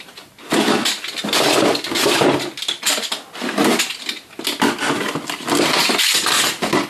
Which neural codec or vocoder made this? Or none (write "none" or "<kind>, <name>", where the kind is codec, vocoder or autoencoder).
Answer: none